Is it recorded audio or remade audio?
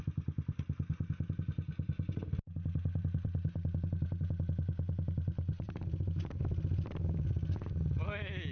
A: remade